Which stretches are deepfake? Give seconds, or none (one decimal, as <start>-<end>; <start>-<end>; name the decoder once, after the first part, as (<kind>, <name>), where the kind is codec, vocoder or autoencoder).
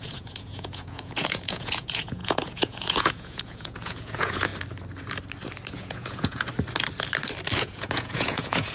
0.0-4.5 (vocoder, Vocos); 5.7-6.5; 7.6-8.7